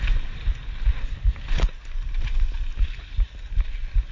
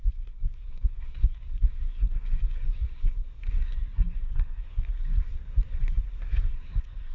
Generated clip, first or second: second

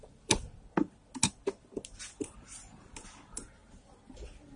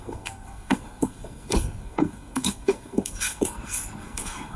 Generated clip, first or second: second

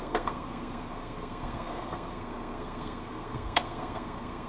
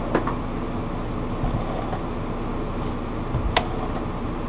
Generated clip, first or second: first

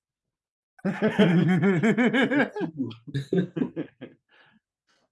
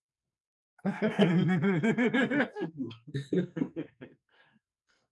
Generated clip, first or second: second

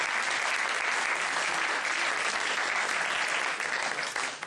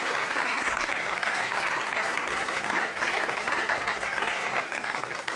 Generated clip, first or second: second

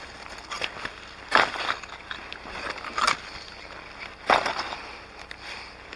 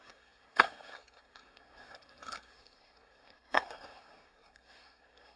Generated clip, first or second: second